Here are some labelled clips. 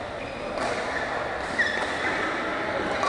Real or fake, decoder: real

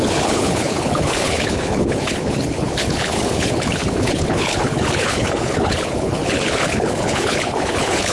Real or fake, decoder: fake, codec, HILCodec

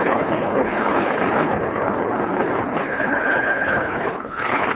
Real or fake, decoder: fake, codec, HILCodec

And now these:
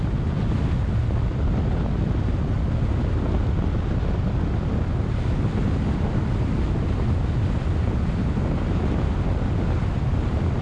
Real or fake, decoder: real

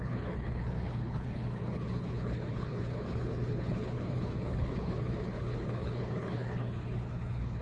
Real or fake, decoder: fake, codec, HILCodec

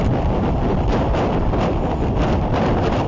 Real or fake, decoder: real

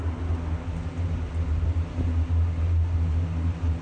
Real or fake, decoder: real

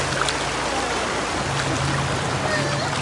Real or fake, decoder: real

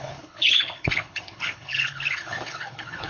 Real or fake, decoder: fake, codec, HILCodec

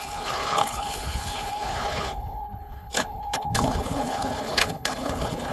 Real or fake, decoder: fake, codec, HILCodec